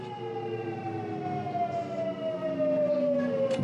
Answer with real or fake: real